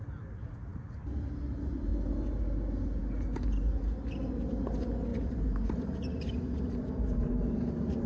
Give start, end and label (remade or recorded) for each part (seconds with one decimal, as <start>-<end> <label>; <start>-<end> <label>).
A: 0.0-5.1 recorded; 5.1-8.1 remade